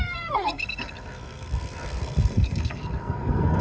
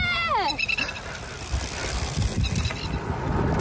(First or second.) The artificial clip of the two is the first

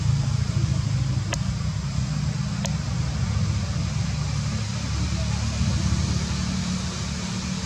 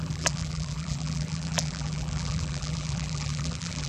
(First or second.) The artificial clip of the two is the second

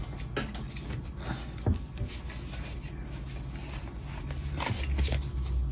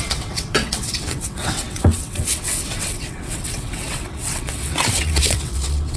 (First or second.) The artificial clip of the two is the second